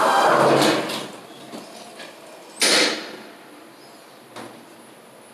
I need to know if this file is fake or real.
real